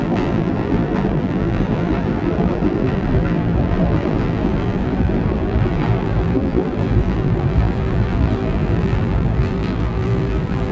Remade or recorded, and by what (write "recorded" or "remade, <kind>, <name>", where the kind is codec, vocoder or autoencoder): remade, vocoder, BigVGAN v2